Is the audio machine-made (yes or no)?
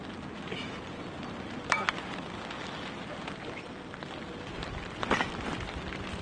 no